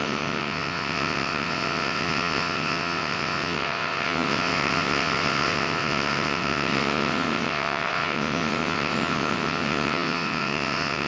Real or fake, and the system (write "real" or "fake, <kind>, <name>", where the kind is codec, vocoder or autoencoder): fake, vocoder, WaveNeXt